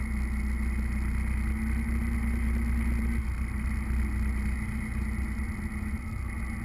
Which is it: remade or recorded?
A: recorded